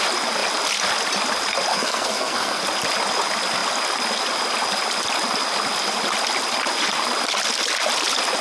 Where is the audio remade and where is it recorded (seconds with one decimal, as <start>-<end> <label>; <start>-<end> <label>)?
0.0-1.7 recorded; 1.7-2.6 remade; 2.6-8.4 recorded